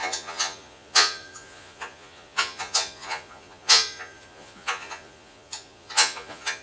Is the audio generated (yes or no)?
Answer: yes